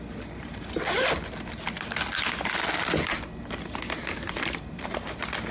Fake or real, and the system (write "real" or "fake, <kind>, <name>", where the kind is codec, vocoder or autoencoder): fake, vocoder, BigVGAN v2